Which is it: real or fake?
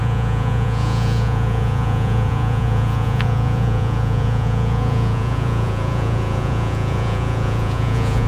fake